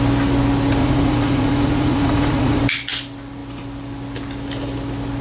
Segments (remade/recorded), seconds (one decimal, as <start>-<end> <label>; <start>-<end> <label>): 0.0-0.8 recorded; 0.8-2.6 remade; 2.6-5.2 recorded